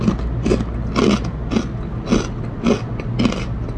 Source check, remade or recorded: recorded